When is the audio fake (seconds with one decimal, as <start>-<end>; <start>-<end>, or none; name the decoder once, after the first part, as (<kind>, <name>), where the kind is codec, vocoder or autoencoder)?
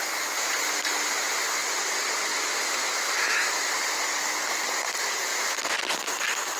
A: 2.3-3.7 (autoencoder, DAC-VAE)